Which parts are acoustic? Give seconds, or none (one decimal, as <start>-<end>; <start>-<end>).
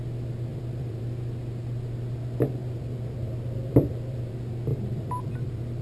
0.0-0.5; 1.0-2.6; 4.3-4.7